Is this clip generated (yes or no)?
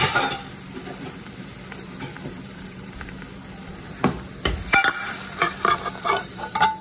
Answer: yes